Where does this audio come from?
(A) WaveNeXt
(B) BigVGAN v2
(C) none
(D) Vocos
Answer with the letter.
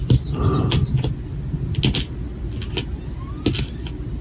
C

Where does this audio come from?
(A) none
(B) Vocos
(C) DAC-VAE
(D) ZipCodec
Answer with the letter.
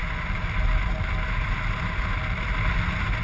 A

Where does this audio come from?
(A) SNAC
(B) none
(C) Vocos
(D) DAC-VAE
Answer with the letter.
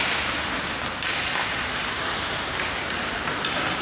B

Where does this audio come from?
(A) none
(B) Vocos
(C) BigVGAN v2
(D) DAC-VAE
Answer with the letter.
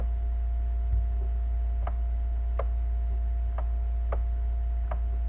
A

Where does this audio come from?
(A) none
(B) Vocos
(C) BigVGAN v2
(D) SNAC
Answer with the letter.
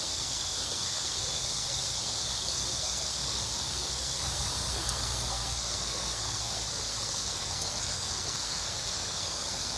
D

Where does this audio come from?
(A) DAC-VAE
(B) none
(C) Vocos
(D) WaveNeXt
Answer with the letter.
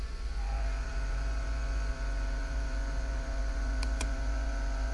C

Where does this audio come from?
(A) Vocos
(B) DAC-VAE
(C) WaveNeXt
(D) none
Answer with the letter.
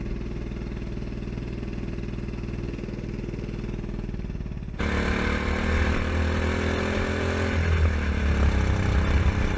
D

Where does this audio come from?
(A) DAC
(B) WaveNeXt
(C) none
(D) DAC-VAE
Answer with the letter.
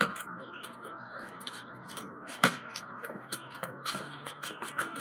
A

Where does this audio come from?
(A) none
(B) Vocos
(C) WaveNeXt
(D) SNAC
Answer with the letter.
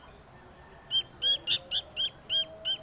A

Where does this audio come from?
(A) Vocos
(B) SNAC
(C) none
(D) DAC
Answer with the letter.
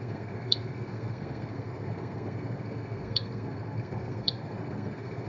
B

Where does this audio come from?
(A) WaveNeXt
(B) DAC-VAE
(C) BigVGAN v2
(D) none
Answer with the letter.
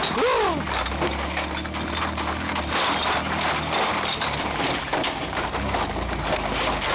D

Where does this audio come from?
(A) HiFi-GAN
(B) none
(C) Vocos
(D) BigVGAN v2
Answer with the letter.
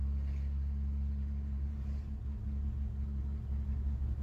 B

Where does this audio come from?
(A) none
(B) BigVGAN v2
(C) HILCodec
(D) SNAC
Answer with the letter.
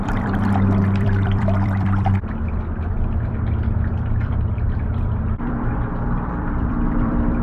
B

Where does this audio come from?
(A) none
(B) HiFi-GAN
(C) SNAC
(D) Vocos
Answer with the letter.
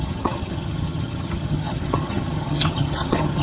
B